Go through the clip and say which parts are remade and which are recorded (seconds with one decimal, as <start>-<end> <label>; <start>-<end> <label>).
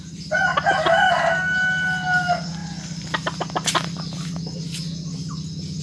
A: 0.0-5.8 recorded